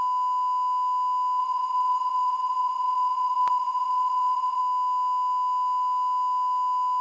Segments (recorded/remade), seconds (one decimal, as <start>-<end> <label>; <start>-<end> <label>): 0.0-1.4 recorded; 1.4-4.6 remade; 4.6-7.0 recorded